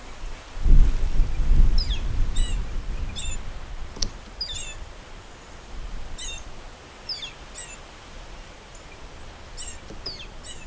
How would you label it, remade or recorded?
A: recorded